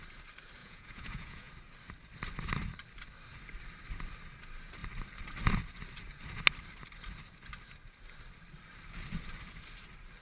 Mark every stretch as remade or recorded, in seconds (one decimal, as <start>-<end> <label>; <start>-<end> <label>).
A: 0.0-0.6 recorded; 0.6-1.5 remade; 1.5-10.2 recorded